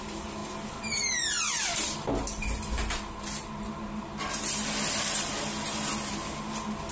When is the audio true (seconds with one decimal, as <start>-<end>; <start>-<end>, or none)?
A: 0.0-6.9